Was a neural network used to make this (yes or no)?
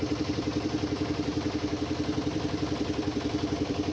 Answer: yes